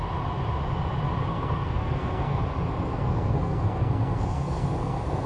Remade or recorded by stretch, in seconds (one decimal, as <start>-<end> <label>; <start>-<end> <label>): 0.0-1.3 recorded; 1.3-2.4 remade; 2.4-2.9 recorded; 2.9-5.3 remade